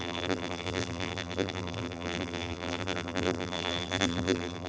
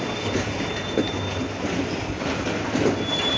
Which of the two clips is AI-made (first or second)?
first